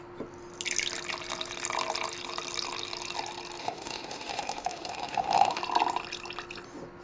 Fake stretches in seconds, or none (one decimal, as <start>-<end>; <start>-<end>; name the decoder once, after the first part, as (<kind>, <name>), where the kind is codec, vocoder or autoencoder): 3.6-5.6 (autoencoder, DAC-VAE)